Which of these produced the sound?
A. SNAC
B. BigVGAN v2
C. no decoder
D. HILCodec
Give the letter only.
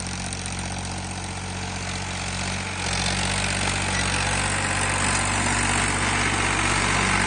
C